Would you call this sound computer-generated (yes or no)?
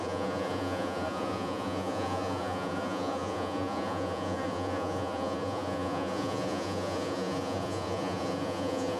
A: yes